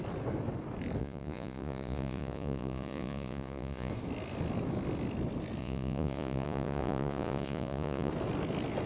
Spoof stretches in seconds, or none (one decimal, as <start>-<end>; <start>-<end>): 1.0-3.9; 5.6-8.1

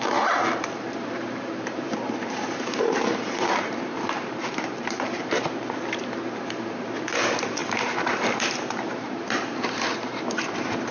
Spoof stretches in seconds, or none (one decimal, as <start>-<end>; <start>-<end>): 0.0-10.9

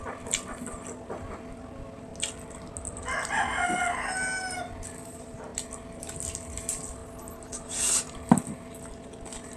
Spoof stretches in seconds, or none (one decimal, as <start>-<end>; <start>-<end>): 0.0-2.1; 4.6-5.5; 6.6-7.0; 8.0-9.6

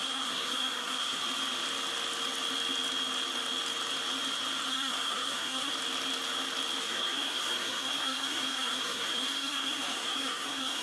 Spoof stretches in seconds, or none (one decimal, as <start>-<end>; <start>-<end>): 0.0-1.2; 4.7-5.7; 6.8-10.8

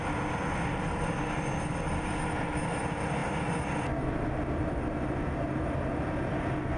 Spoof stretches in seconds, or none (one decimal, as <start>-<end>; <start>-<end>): none

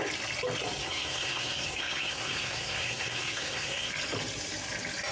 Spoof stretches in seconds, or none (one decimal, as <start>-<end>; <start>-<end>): 0.8-3.9

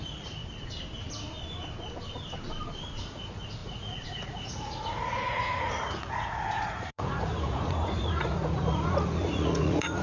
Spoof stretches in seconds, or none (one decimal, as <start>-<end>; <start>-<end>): 0.0-0.4; 2.8-10.0